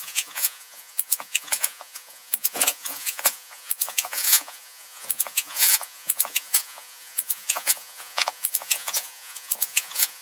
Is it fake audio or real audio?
fake